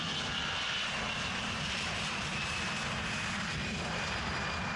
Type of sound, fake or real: fake